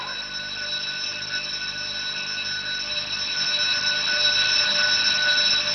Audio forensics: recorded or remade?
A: recorded